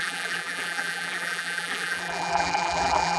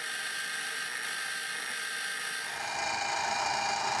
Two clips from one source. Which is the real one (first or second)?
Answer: second